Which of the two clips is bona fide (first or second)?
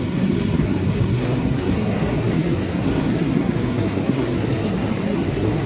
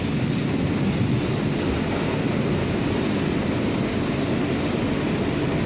second